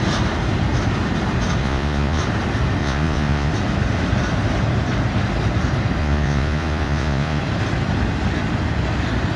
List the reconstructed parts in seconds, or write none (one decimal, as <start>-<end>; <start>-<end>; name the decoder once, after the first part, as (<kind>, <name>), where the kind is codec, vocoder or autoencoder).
1.6-2.2 (vocoder, Vocos); 2.8-3.5; 6.0-7.4